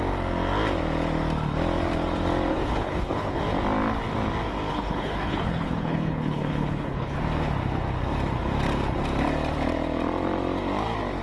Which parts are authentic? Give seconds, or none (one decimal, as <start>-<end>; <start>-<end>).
0.0-2.5; 3.4-4.7; 7.2-11.2